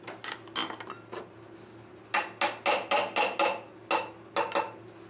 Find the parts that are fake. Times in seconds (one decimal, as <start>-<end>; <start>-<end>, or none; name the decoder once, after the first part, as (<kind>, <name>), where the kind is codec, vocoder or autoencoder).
none